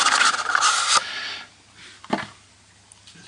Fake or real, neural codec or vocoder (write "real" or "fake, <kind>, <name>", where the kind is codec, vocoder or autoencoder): real